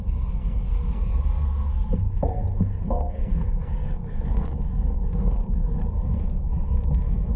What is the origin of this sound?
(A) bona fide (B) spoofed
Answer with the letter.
B